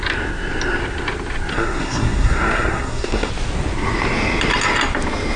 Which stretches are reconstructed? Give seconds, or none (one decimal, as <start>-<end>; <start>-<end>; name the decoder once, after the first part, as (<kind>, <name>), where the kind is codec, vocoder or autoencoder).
1.5-3.3 (codec, SNAC)